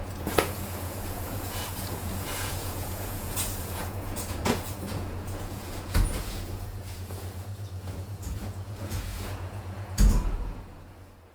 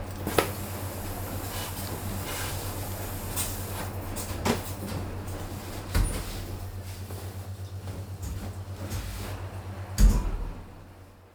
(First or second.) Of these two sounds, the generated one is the first